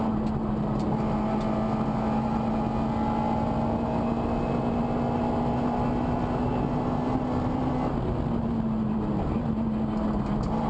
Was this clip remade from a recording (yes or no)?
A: no